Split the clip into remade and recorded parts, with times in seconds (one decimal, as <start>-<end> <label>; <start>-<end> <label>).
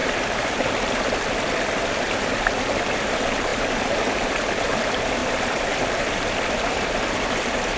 0.0-7.8 remade